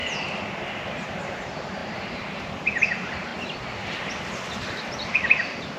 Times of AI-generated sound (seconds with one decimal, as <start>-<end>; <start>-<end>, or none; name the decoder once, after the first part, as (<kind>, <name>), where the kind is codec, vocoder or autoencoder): 0.9-3.3 (vocoder, BigVGAN v2); 4.7-5.8